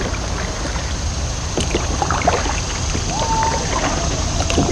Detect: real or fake real